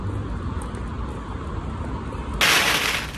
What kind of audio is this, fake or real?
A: real